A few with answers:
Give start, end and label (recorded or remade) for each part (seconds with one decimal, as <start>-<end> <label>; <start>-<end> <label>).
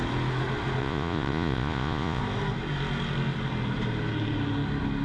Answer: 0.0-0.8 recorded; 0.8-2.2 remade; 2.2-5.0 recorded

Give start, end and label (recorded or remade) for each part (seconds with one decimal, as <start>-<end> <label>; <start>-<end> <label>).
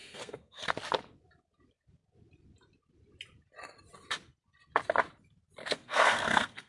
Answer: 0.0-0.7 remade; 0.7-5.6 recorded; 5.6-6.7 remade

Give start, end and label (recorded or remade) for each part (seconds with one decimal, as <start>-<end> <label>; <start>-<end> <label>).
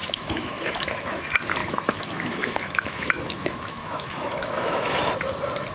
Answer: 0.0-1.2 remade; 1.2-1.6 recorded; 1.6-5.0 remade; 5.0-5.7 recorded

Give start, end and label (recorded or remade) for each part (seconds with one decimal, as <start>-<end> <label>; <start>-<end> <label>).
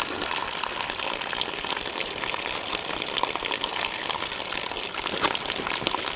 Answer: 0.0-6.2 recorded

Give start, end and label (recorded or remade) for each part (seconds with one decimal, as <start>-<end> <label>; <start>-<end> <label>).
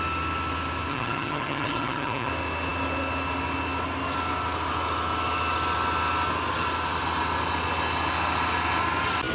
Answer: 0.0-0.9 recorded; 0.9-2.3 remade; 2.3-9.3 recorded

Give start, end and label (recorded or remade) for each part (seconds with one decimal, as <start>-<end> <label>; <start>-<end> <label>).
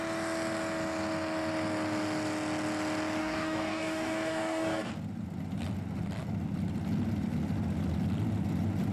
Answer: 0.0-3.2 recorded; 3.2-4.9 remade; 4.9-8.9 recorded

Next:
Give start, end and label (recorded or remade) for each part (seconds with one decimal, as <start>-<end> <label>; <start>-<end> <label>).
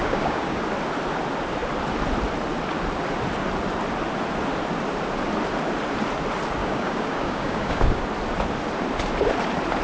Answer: 0.0-0.6 remade; 0.6-6.6 recorded; 6.6-8.0 remade; 8.0-9.8 recorded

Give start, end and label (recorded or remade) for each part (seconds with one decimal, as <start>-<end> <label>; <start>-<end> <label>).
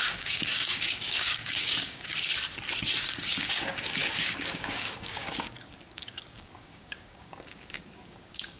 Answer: 0.0-2.3 remade; 2.3-3.0 recorded; 3.0-8.6 remade